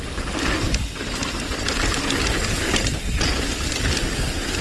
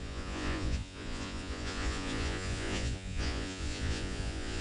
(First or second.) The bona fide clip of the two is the first